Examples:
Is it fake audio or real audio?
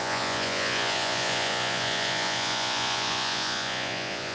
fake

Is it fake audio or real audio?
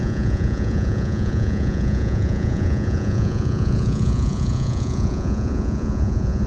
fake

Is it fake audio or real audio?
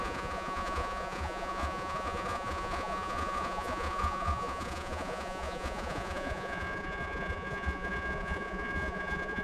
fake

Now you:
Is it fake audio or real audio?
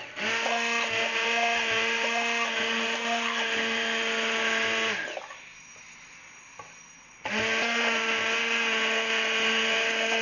real